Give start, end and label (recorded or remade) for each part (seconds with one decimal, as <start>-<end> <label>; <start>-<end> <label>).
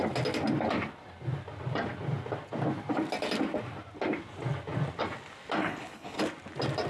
0.0-5.6 recorded; 5.6-6.2 remade; 6.2-6.9 recorded